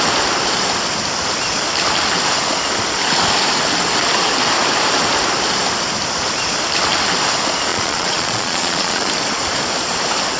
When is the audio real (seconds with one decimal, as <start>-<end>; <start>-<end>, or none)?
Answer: 0.0-7.7; 9.1-10.4